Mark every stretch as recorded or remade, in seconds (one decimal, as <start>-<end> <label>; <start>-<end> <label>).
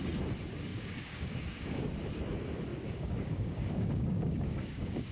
0.0-0.7 recorded; 0.7-1.9 remade; 1.9-2.7 recorded; 2.7-5.1 remade